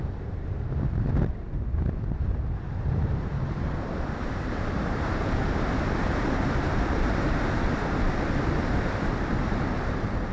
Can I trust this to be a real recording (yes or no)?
no